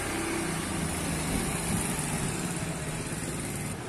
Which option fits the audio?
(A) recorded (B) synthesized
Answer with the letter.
A